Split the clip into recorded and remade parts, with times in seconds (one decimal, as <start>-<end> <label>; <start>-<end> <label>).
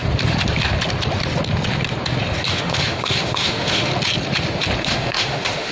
0.0-2.5 recorded; 2.5-3.9 remade; 3.9-4.8 recorded; 4.8-5.7 remade